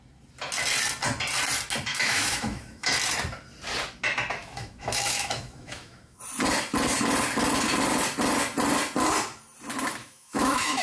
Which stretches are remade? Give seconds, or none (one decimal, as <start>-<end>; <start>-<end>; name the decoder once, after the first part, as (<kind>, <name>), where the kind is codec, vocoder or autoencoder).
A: 1.9-2.9 (autoencoder, DAC-VAE); 4.4-6.2; 10.0-10.8